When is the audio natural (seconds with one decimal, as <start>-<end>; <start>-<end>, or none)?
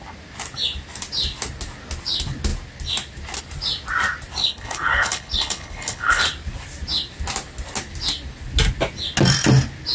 0.0-4.4; 6.2-9.9